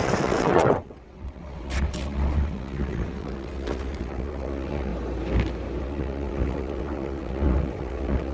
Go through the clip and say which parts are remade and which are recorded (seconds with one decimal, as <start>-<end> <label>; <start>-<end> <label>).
0.0-4.9 remade; 4.9-5.8 recorded; 5.8-8.3 remade